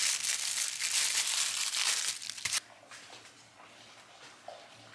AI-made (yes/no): no